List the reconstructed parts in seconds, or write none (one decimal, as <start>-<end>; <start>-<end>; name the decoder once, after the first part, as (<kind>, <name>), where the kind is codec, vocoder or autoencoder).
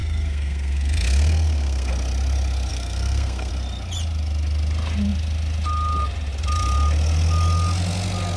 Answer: 0.0-1.9 (codec, SNAC); 2.7-3.5